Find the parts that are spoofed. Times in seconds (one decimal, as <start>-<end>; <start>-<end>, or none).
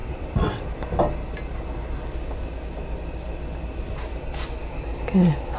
0.0-0.6